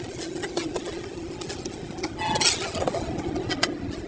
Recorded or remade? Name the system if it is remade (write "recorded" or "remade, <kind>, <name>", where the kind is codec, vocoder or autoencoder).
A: recorded